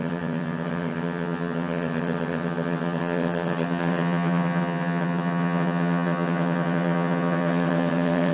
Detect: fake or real fake